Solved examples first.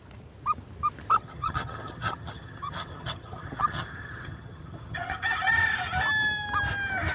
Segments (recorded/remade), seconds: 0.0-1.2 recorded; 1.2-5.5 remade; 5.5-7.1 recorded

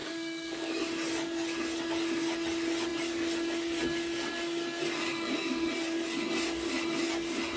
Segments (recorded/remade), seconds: 0.0-0.8 remade; 0.8-5.1 recorded; 5.1-5.7 remade; 5.7-7.6 recorded

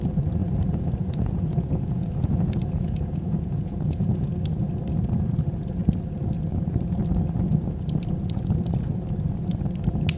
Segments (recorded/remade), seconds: 0.0-0.4 recorded; 0.4-4.3 remade; 4.3-10.2 recorded

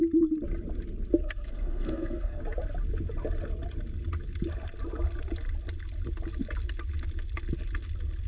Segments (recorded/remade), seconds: 0.0-1.2 recorded; 1.2-2.4 remade; 2.4-8.3 recorded

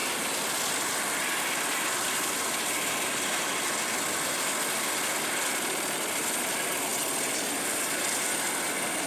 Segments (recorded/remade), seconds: 0.0-2.6 remade; 2.6-9.1 recorded

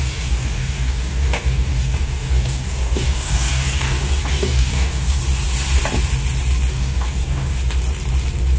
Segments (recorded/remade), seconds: 0.0-5.2 remade; 5.2-6.7 recorded; 6.7-7.6 remade; 7.6-8.6 recorded